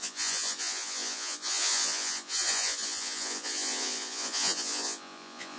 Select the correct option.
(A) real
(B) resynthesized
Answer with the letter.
B